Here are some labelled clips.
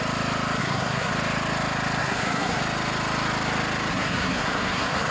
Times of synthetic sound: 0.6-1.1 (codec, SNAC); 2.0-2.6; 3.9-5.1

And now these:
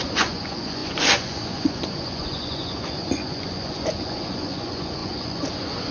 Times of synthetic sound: 0.0-5.9 (vocoder, Vocos)

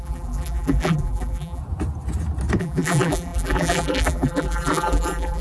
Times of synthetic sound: 0.0-1.6 (vocoder, BigVGAN v2); 2.6-5.4

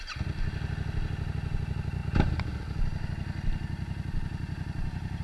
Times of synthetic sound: none

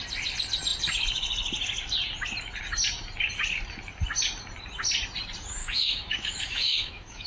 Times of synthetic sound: 5.6-7.3 (autoencoder, DAC-VAE)